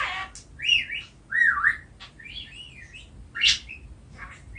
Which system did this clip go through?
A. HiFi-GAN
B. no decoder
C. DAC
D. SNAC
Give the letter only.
B